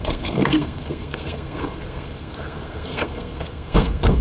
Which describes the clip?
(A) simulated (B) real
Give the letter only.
A